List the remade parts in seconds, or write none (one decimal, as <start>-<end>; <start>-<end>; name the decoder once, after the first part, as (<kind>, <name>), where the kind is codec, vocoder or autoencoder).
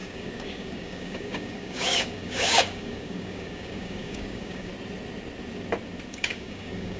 0.0-4.7 (codec, DAC); 6.1-7.0